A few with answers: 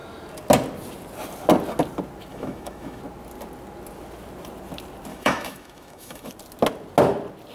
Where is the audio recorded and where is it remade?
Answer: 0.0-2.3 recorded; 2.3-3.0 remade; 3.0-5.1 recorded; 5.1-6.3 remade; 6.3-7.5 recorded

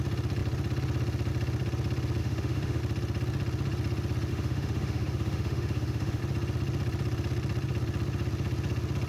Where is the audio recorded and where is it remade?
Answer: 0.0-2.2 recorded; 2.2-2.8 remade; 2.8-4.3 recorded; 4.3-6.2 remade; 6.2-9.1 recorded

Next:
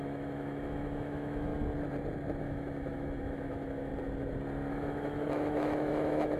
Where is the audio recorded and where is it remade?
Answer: 0.0-1.5 remade; 1.5-2.4 recorded; 2.4-3.9 remade; 3.9-4.7 recorded; 4.7-6.4 remade